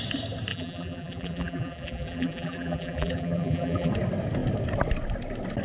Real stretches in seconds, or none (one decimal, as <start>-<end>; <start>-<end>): 0.0-0.5; 3.9-5.6